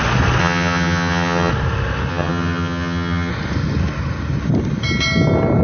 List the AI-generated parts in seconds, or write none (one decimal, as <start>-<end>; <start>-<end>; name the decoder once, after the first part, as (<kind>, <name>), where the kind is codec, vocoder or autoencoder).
0.4-1.5 (vocoder, HiFi-GAN); 2.1-3.3